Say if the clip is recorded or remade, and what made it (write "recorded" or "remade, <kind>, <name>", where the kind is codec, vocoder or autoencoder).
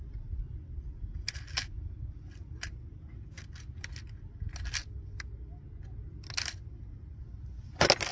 recorded